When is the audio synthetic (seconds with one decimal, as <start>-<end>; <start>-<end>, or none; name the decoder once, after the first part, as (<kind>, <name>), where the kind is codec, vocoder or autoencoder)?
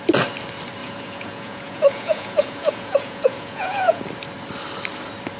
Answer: 0.8-4.0 (vocoder, Vocos)